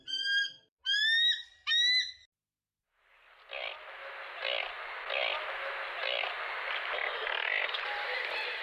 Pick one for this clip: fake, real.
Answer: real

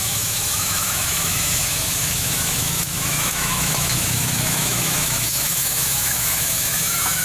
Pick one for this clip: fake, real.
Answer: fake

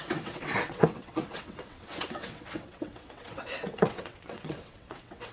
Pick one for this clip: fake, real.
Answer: fake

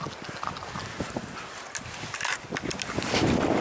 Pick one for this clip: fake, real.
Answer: real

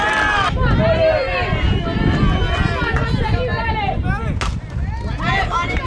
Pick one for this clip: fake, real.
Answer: real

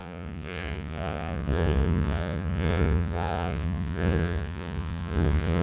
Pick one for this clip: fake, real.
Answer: fake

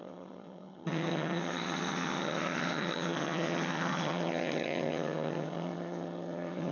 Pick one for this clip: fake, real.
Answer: fake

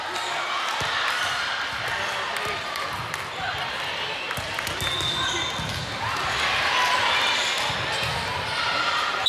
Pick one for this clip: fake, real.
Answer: real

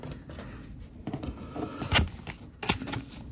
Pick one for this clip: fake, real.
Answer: real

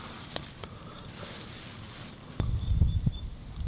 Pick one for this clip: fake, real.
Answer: fake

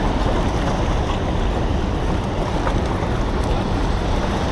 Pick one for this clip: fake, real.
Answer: real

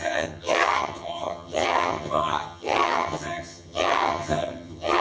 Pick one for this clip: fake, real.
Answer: fake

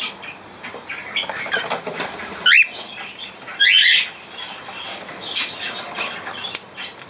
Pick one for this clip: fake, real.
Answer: real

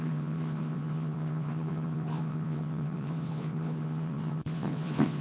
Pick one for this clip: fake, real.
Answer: fake